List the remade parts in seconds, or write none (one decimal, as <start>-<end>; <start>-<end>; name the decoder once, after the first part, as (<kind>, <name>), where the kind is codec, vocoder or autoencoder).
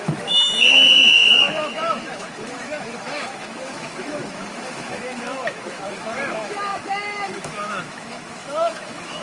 0.0-9.2 (autoencoder, DAC-VAE)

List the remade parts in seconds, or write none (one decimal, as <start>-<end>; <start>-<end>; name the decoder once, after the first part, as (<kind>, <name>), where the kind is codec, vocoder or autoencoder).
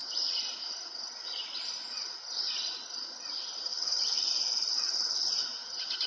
none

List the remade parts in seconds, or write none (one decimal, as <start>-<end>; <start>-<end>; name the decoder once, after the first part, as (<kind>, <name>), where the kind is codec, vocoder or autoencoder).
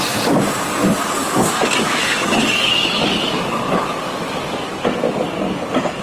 1.2-4.8 (codec, DAC)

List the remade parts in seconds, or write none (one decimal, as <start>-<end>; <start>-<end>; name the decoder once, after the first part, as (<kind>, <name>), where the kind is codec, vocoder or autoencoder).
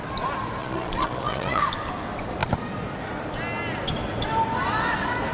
0.6-1.6 (vocoder, Vocos)